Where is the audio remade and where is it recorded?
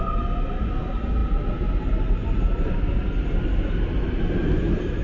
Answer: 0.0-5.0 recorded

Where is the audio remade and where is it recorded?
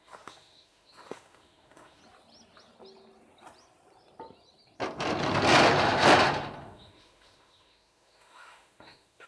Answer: 0.0-2.0 remade; 2.0-6.6 recorded; 6.6-9.3 remade